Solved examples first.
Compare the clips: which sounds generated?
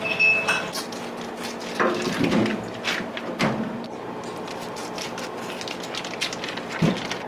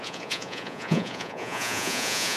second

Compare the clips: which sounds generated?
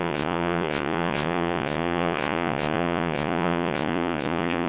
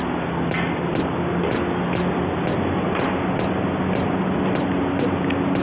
first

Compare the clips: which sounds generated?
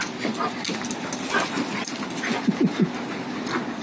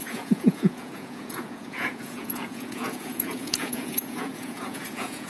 second